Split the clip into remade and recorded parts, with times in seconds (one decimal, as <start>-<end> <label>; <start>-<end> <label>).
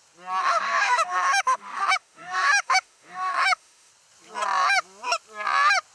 0.0-0.4 recorded; 0.4-3.9 remade; 3.9-5.9 recorded